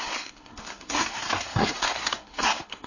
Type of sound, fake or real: fake